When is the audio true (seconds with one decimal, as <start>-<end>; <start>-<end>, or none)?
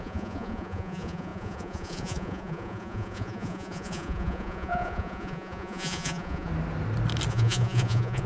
6.5-7.3